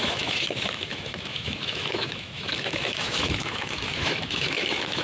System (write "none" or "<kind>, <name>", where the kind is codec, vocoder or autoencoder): autoencoder, DAC-VAE